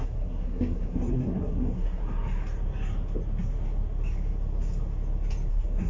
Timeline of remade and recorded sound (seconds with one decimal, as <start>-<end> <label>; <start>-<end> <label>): 0.0-2.0 remade; 2.0-5.5 recorded; 5.5-5.9 remade

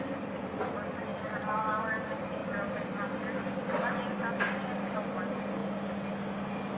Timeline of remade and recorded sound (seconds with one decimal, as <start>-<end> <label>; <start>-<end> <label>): 0.0-1.1 remade; 1.1-1.8 recorded; 1.8-5.6 remade; 5.6-6.8 recorded

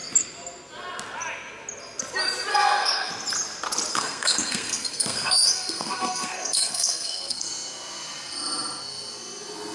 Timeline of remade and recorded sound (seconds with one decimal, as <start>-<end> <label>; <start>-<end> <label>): 0.0-2.5 recorded; 2.5-3.1 remade; 3.1-3.9 recorded; 3.9-7.5 remade; 7.5-9.7 recorded

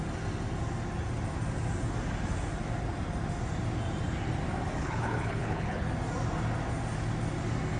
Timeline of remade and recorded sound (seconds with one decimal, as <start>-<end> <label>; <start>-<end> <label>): 0.0-4.8 recorded; 4.8-5.9 remade; 5.9-7.8 recorded